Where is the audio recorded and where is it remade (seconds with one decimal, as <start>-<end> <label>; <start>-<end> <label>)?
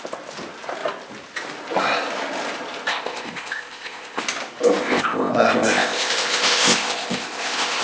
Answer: 0.0-2.9 recorded; 2.9-4.2 remade; 4.2-4.8 recorded; 4.8-7.8 remade